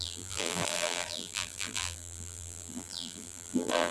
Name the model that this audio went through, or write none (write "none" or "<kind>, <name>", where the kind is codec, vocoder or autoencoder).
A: vocoder, BigVGAN v2